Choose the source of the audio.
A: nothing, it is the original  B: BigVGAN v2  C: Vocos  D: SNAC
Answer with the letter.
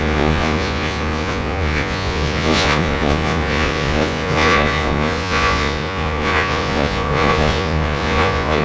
C